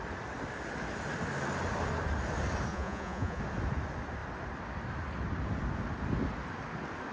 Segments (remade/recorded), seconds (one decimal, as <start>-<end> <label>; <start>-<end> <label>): 0.0-2.7 recorded; 2.7-3.4 remade; 3.4-7.1 recorded